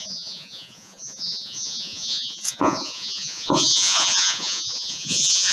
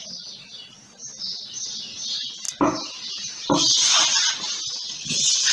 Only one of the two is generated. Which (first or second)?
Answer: first